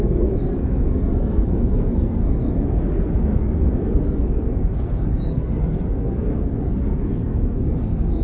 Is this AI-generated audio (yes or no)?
yes